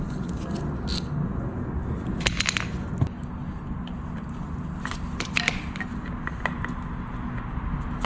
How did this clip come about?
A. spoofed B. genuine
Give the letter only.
B